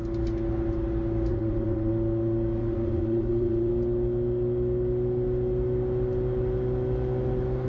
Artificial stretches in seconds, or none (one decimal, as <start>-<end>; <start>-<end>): 1.3-1.9; 2.6-3.7